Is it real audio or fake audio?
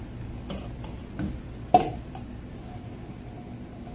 real